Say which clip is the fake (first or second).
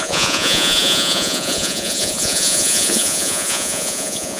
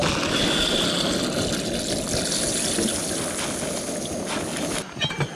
first